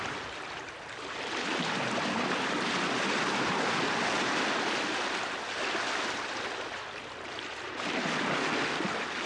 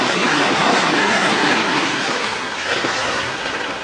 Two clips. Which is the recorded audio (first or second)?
first